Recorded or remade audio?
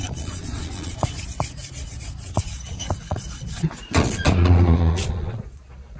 remade